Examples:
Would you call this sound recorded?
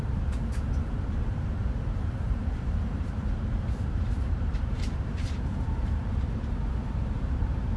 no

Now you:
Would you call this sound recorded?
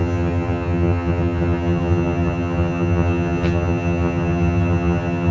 no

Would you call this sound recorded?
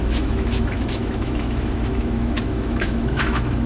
no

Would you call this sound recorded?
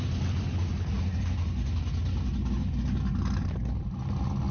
yes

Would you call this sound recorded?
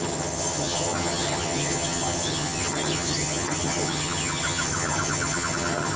no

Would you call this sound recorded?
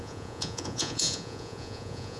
no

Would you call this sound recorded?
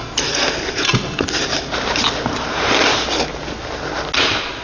yes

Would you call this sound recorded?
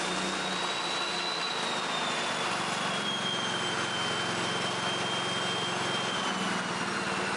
yes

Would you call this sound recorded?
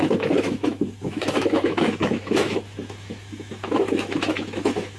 no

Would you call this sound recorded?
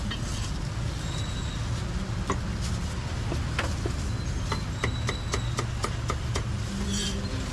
yes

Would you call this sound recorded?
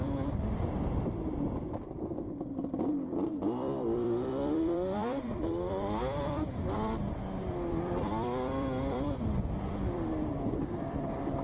no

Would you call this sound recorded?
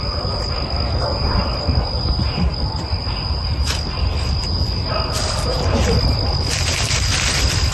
yes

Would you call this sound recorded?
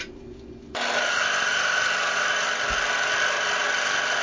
yes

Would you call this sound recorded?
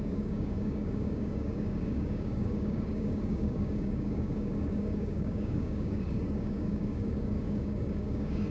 no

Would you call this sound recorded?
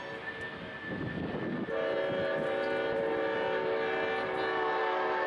yes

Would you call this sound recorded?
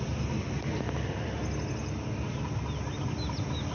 yes